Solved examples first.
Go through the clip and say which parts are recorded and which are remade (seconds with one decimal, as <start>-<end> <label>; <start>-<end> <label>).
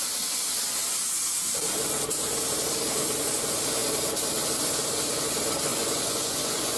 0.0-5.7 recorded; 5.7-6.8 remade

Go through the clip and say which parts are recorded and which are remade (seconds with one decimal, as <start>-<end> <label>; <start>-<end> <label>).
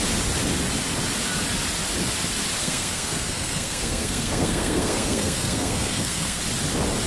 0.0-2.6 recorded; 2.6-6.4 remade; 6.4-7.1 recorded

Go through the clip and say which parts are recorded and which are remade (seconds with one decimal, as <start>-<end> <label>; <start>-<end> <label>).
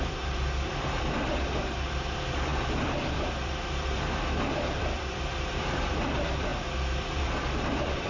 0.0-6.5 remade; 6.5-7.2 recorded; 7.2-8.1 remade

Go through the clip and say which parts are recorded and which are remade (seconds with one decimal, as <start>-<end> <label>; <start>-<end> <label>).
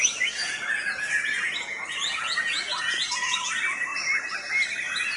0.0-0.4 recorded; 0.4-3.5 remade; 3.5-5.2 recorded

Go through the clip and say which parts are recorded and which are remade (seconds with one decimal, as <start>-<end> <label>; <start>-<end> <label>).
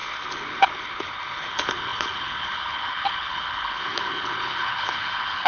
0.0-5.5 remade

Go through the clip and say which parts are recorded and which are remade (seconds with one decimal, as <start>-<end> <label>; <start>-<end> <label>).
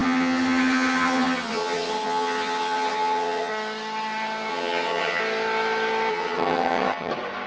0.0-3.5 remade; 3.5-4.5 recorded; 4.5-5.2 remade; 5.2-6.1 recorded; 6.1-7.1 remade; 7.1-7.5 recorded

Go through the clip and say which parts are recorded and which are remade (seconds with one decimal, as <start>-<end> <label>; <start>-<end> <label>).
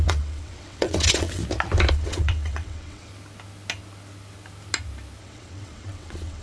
0.0-1.4 remade; 1.4-1.9 recorded; 1.9-3.1 remade; 3.1-5.2 recorded; 5.2-6.4 remade